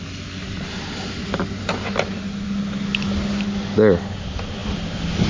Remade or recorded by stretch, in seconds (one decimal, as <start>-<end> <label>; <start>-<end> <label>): 0.0-5.3 recorded

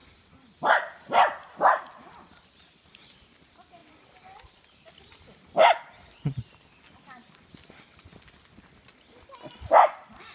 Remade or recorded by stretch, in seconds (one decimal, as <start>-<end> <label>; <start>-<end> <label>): 0.0-1.0 remade; 1.0-10.3 recorded

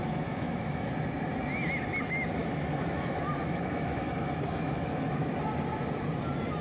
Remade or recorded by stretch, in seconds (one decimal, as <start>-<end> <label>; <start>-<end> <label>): 0.0-0.9 remade; 0.9-2.4 recorded; 2.4-5.3 remade; 5.3-6.6 recorded

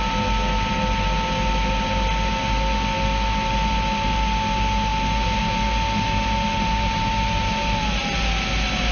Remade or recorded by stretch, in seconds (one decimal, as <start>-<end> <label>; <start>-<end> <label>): 0.0-8.9 recorded

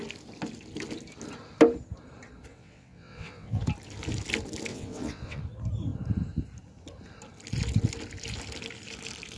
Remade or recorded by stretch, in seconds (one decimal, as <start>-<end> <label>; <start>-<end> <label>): 0.0-2.5 recorded; 2.5-3.6 remade; 3.6-4.7 recorded; 4.7-5.4 remade; 5.4-9.4 recorded

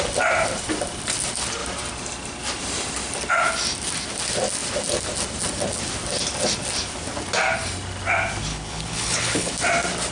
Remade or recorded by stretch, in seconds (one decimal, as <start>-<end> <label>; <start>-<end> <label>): 0.0-8.5 recorded; 8.5-9.5 remade; 9.5-10.1 recorded

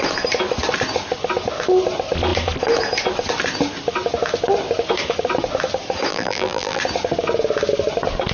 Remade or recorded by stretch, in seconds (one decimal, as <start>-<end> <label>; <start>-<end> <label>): 0.0-6.1 recorded; 6.1-6.8 remade; 6.8-8.3 recorded